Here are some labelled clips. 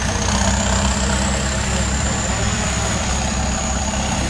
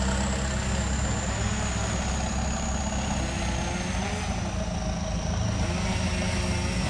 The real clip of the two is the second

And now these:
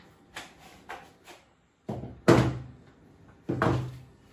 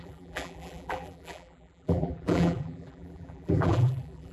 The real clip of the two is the first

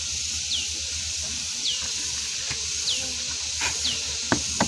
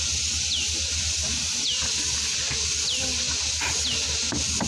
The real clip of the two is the second